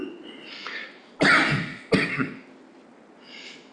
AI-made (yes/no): no